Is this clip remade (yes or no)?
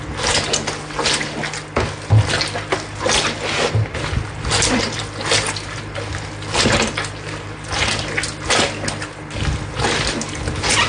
no